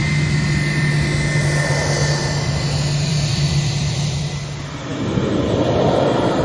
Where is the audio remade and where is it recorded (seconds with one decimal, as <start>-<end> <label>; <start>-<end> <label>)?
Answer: 0.0-3.1 recorded; 3.1-4.2 remade; 4.2-6.4 recorded